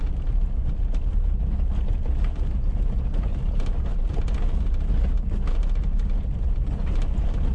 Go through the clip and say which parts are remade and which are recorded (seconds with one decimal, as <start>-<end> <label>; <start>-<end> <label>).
0.0-2.3 recorded; 2.3-3.9 remade; 3.9-7.5 recorded